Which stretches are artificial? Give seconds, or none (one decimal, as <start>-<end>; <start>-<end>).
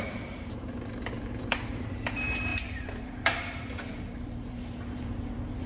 0.0-5.7